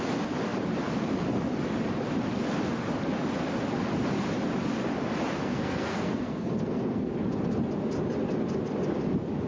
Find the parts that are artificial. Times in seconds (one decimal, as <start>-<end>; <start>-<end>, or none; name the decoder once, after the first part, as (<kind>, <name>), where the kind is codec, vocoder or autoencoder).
5.4-7.1 (codec, SNAC)